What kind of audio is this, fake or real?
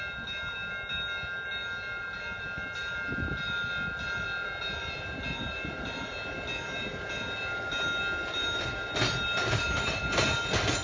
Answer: real